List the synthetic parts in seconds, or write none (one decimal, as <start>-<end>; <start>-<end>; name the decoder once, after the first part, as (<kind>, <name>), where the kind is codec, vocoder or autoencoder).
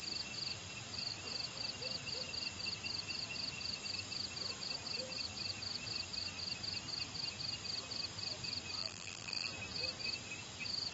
8.8-9.5 (vocoder, BigVGAN v2)